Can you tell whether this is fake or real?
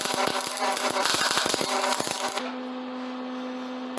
real